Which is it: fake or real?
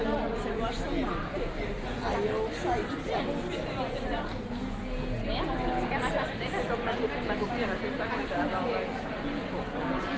real